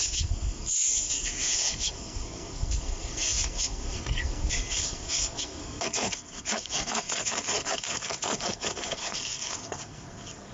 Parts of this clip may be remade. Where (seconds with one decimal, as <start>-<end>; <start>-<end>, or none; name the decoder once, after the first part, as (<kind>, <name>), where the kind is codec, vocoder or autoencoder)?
0.0-10.5 (codec, SNAC)